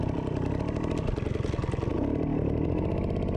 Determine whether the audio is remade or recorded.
recorded